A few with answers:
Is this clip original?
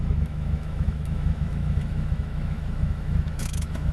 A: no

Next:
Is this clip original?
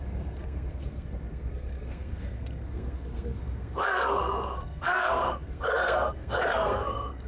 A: no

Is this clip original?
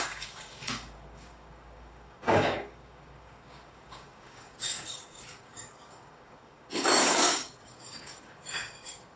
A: no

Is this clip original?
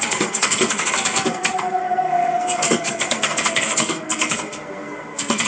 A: no